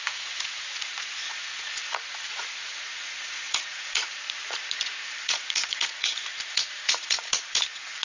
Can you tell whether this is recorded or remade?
remade